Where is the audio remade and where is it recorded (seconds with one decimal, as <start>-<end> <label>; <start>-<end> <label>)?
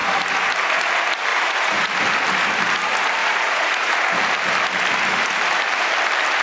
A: 0.0-1.3 recorded; 1.3-1.9 remade; 1.9-3.2 recorded; 3.2-3.9 remade; 3.9-6.4 recorded